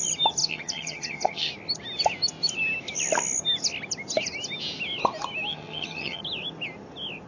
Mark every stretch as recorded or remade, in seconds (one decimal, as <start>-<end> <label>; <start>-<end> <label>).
0.0-0.4 recorded; 0.4-1.5 remade; 1.5-5.5 recorded; 5.5-6.2 remade; 6.2-7.3 recorded